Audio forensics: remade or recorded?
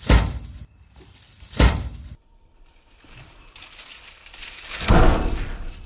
remade